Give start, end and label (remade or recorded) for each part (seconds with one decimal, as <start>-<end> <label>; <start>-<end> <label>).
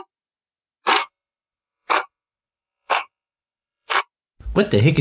0.0-1.0 recorded; 1.0-4.0 remade; 4.0-5.0 recorded